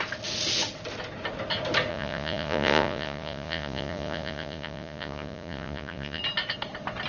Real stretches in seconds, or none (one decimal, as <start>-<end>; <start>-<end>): 0.0-1.9; 6.2-7.1